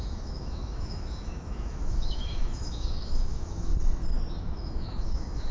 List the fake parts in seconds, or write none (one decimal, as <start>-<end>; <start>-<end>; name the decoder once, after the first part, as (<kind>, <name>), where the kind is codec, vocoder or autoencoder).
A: 0.0-3.7 (autoencoder, DAC-VAE); 4.4-5.5

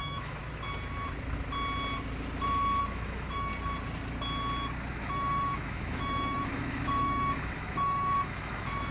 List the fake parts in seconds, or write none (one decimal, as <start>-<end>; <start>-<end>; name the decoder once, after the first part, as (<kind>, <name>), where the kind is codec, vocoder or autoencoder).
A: 0.0-0.4 (autoencoder, DAC-VAE); 2.8-3.5; 4.9-8.9

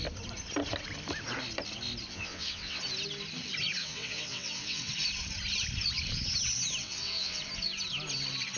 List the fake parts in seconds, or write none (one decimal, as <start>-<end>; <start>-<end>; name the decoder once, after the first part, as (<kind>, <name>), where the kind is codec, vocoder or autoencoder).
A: 2.1-2.8 (vocoder, WaveNeXt); 3.8-4.9; 6.8-7.4

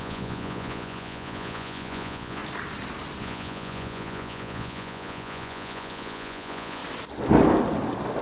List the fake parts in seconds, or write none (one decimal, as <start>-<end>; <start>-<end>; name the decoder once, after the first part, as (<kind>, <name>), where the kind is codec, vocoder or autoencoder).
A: 0.0-2.4 (vocoder, Vocos); 3.2-6.8

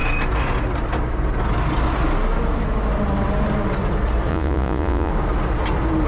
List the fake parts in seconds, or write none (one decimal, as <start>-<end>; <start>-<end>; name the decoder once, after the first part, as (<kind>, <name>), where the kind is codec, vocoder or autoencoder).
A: 4.3-5.1 (vocoder, Vocos)

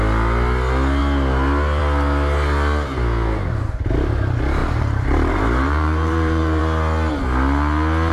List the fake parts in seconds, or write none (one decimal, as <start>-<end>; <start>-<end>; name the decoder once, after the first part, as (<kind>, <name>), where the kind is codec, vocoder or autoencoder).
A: 4.6-6.6 (vocoder, BigVGAN v2)